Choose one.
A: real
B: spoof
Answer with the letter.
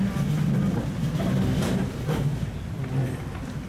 A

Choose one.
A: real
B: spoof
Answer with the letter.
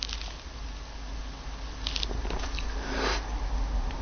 A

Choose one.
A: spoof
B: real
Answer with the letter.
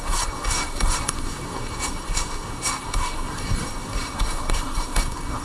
A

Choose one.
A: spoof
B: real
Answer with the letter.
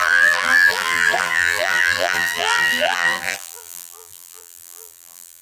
A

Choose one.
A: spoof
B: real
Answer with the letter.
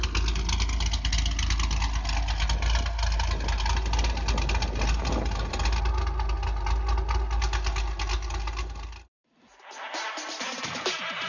B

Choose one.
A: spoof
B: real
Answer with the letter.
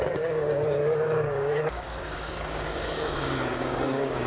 A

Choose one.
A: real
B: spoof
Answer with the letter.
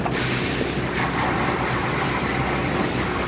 A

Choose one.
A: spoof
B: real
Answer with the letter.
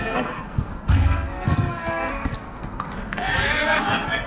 A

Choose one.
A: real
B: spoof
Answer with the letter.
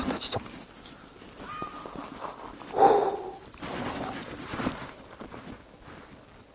A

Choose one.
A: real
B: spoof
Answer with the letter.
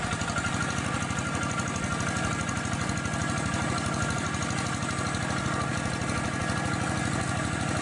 A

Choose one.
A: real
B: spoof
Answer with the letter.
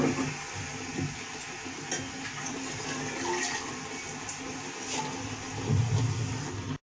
A